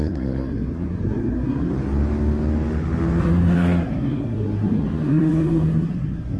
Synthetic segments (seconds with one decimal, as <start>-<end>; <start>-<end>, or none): 0.0-1.7; 3.2-6.4

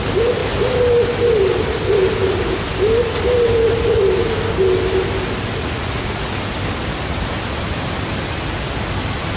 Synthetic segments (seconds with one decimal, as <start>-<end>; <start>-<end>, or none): 5.6-6.3

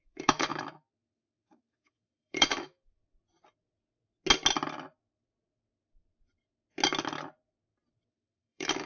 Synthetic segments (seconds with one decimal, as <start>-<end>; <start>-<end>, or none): 0.0-3.0; 8.1-8.9

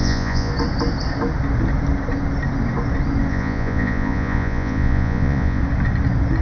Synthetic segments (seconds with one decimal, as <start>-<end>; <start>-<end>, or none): 0.0-0.5; 3.3-5.6

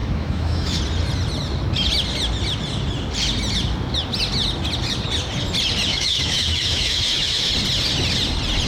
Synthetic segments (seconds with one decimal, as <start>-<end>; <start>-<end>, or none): 0.0-0.8; 5.9-7.5

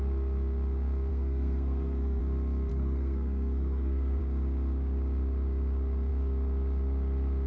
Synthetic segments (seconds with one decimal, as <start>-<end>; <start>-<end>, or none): 1.1-2.2; 2.7-4.2